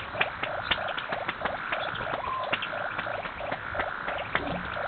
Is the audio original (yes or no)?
yes